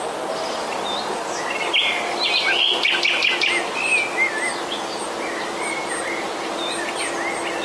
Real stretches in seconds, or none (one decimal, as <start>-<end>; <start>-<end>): 0.0-7.6